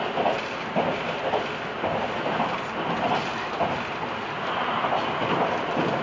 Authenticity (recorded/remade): recorded